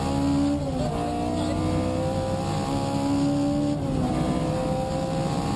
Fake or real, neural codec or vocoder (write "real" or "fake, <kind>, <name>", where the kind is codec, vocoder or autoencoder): real